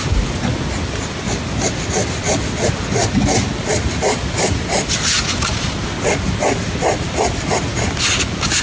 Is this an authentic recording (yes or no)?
yes